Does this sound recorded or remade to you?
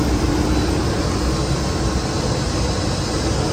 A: recorded